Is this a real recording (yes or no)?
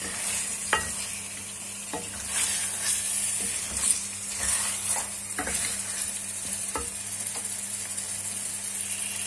yes